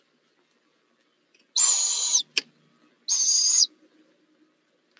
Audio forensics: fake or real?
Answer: real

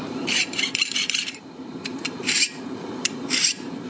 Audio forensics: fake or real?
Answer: fake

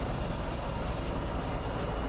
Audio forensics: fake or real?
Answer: real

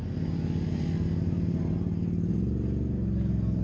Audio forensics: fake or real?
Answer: real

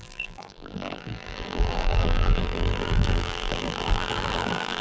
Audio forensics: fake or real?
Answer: fake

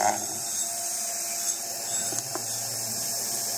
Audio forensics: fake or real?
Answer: real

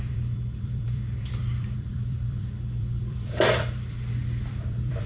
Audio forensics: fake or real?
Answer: fake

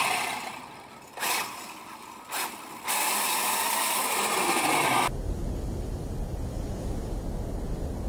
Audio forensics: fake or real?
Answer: real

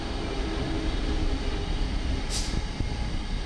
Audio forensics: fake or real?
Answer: real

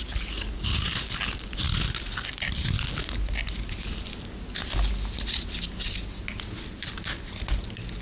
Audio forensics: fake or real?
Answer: real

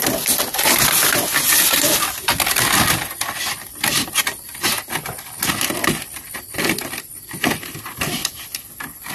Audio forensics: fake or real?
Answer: real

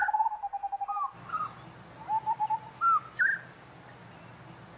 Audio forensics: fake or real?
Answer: real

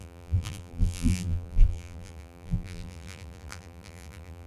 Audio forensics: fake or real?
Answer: fake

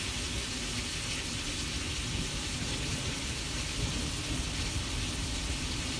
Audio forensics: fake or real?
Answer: real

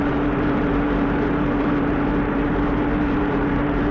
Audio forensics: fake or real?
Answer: fake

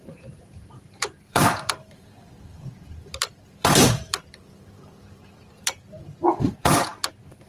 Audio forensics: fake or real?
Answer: fake